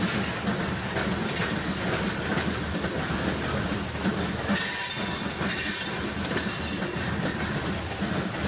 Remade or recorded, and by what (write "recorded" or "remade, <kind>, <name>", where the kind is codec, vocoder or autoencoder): recorded